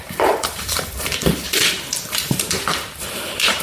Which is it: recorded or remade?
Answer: remade